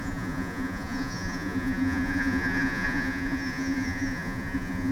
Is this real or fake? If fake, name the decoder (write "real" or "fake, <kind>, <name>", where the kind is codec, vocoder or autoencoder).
fake, vocoder, Vocos